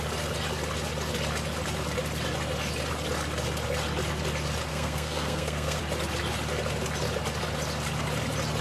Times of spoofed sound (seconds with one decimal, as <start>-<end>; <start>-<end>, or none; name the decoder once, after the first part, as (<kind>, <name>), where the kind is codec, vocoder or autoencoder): 4.7-5.8 (codec, SNAC)